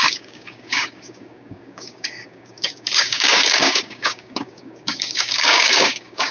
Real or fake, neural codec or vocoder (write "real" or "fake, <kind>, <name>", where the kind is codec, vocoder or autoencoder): fake, codec, DAC